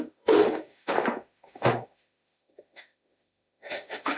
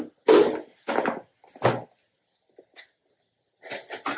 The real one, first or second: second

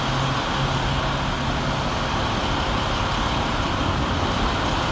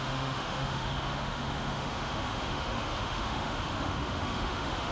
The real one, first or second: first